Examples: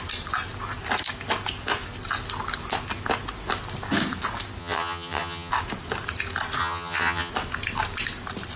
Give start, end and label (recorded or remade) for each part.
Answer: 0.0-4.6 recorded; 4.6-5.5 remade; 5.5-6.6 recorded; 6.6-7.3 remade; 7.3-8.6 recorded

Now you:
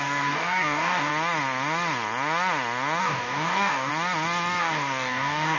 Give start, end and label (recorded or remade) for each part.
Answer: 0.0-1.1 remade; 1.1-3.0 recorded; 3.0-3.9 remade; 3.9-4.6 recorded; 4.6-5.6 remade

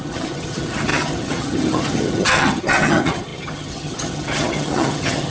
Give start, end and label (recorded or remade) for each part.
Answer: 0.0-5.3 remade

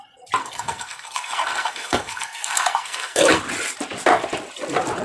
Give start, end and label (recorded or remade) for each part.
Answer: 0.0-0.4 recorded; 0.4-3.4 remade; 3.4-5.0 recorded

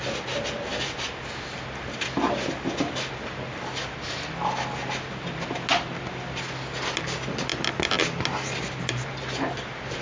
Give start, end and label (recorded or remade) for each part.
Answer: 0.0-10.0 recorded

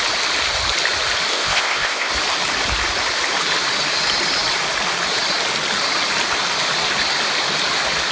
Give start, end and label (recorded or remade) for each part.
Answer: 0.0-1.3 recorded; 1.3-2.1 remade; 2.1-8.1 recorded

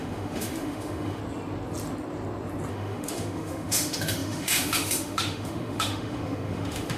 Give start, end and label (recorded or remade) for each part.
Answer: 0.0-1.2 remade; 1.2-2.7 recorded; 2.7-7.0 remade